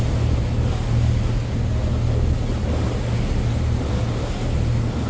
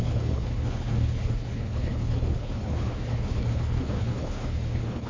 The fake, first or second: second